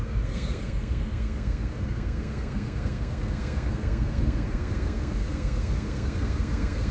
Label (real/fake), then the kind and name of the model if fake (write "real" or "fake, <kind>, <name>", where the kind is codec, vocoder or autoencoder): fake, codec, SNAC